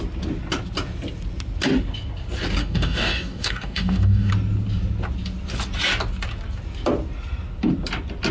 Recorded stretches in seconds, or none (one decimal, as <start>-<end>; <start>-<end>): 0.0-2.6; 4.3-8.3